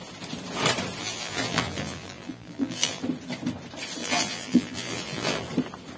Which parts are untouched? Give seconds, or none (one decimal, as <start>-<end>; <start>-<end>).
0.0-1.0; 3.0-4.0; 5.5-6.0